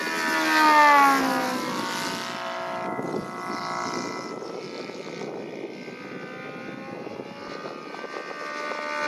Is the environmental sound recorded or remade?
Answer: recorded